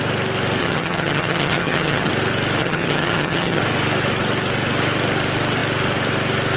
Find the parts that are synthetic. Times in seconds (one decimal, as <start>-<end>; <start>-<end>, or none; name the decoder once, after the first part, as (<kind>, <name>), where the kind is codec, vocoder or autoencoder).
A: 0.6-2.1 (vocoder, HiFi-GAN); 2.6-3.6